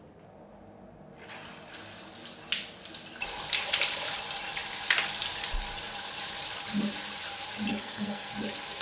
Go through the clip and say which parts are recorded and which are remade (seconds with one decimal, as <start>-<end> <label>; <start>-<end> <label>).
0.0-7.7 recorded; 7.7-8.3 remade; 8.3-8.8 recorded